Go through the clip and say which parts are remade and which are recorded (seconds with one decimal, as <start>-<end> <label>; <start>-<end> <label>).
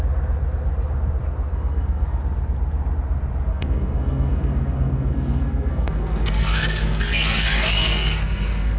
0.0-1.5 recorded; 1.5-2.2 remade; 2.2-3.5 recorded; 3.5-8.8 remade